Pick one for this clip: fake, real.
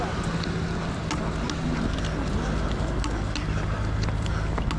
real